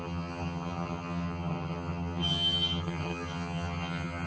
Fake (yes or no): yes